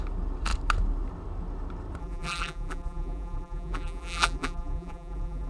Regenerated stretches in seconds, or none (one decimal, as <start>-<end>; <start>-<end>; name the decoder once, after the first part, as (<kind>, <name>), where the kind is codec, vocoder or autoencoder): 2.0-5.5 (vocoder, BigVGAN v2)